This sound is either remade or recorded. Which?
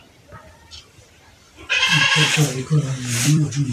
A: remade